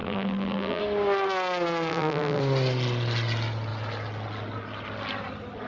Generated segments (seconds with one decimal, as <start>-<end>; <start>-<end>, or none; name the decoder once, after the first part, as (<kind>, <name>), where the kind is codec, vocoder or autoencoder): 0.0-0.8 (vocoder, BigVGAN v2); 1.9-2.4